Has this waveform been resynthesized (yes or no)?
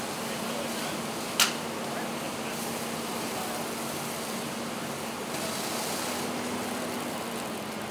no